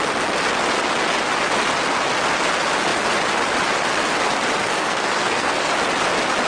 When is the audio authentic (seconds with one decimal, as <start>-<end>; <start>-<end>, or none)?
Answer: 0.0-4.6; 5.7-6.5